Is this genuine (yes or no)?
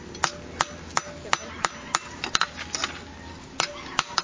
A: yes